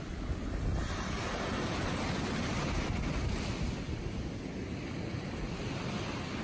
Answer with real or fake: real